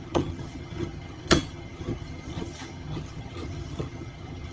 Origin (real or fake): fake